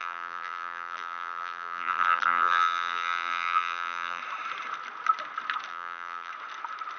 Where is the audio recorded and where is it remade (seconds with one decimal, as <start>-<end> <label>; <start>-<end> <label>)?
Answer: 0.0-4.2 remade; 4.2-5.7 recorded; 5.7-6.3 remade; 6.3-7.0 recorded